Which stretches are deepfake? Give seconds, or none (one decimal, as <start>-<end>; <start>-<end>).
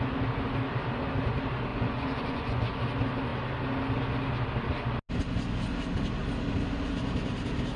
1.7-2.8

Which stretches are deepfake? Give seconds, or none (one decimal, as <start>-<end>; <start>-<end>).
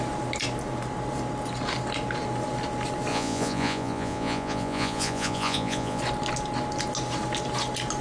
3.1-6.0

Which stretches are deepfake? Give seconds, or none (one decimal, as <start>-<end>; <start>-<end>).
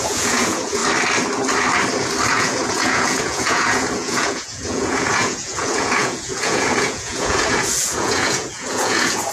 0.0-0.8; 2.3-9.3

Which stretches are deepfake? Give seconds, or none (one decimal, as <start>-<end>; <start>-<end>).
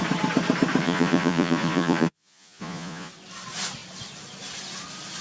0.8-3.1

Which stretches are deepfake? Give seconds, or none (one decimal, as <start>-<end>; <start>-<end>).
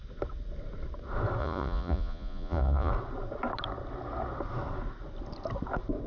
1.4-2.9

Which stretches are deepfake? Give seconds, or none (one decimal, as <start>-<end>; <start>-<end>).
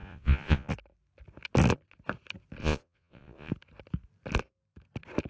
0.0-0.7; 2.6-3.5